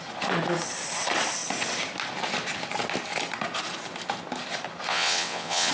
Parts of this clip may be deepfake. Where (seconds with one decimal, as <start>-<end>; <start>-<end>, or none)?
4.9-5.7